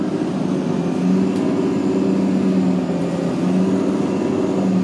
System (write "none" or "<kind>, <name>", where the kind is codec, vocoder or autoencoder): none